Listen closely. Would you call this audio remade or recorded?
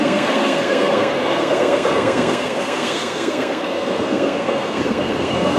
remade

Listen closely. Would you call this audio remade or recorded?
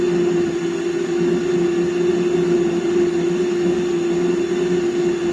recorded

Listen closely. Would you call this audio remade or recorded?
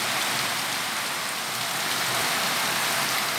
recorded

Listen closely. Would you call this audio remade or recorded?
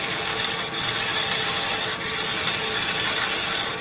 recorded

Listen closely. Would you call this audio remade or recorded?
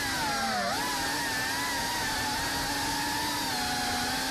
recorded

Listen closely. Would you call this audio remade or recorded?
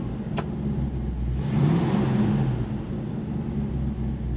recorded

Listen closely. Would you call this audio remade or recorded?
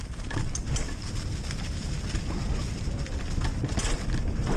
recorded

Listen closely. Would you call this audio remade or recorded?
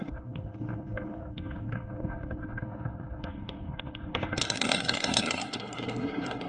remade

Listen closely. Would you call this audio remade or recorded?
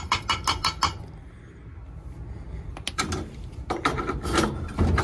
recorded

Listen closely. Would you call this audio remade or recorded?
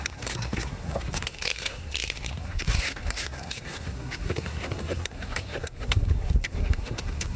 remade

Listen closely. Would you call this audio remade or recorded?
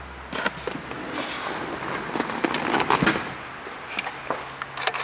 recorded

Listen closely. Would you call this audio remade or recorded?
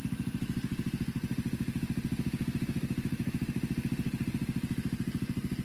recorded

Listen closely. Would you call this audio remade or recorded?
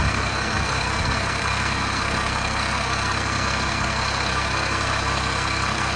remade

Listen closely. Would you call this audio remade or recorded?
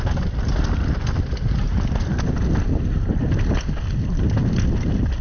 recorded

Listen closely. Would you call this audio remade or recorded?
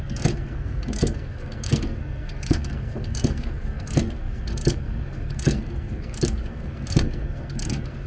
remade